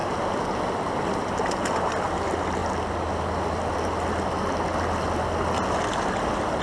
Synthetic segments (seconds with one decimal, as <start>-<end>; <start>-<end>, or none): none